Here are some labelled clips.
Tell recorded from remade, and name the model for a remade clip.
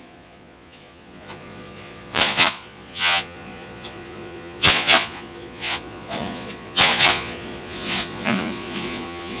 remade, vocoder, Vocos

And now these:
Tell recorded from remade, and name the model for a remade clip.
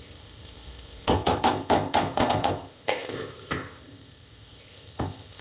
remade, codec, ZipCodec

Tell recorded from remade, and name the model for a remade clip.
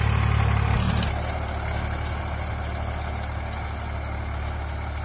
recorded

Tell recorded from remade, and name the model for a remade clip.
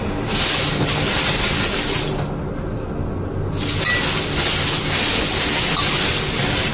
recorded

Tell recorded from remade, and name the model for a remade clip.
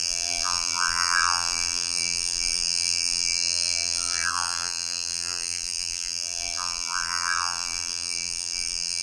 remade, vocoder, BigVGAN v2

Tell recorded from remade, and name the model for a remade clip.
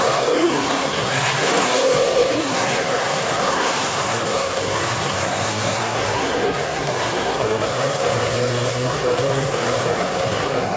remade, codec, SNAC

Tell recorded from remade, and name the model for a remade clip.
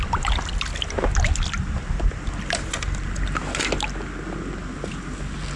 recorded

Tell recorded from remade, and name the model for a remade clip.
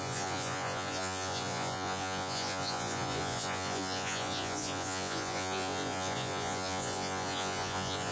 remade, vocoder, Vocos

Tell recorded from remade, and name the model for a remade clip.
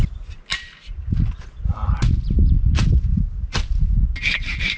recorded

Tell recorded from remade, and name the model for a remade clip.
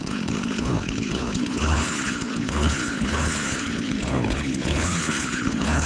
remade, codec, HILCodec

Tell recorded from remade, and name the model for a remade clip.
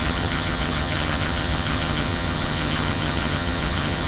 remade, vocoder, HiFi-GAN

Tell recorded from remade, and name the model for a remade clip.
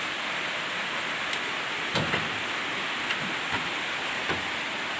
recorded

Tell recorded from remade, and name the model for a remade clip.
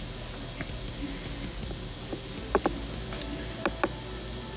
recorded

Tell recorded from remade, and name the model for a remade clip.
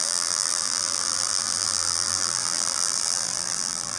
remade, vocoder, BigVGAN v2